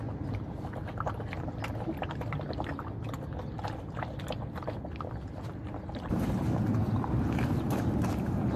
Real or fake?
real